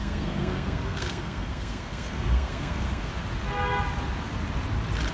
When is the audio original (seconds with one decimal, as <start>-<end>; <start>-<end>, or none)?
3.1-5.1